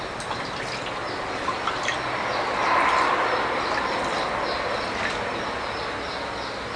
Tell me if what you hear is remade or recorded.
recorded